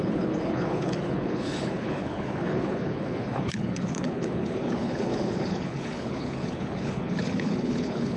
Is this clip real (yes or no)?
no